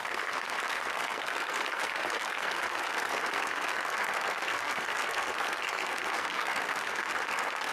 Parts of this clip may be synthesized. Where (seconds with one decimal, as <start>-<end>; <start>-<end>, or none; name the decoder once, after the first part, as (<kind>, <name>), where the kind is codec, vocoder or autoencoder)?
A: 0.0-7.7 (codec, SNAC)